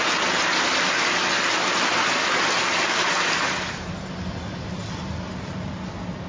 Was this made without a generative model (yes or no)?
yes